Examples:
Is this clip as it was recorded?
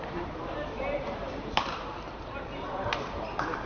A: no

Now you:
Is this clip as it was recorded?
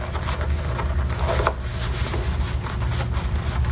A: yes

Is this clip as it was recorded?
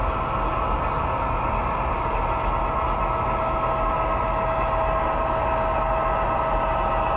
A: yes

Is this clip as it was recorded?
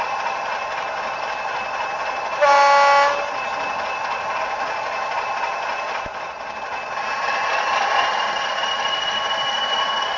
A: yes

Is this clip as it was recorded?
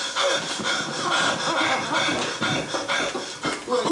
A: yes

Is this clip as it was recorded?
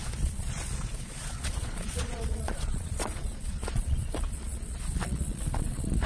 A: no